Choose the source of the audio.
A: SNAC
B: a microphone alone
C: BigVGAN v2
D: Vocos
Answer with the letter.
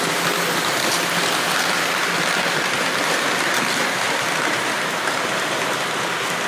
B